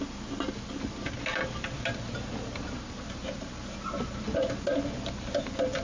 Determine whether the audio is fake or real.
real